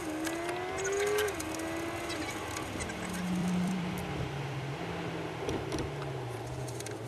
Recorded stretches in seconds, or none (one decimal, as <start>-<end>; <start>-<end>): 0.0-3.4; 5.0-7.1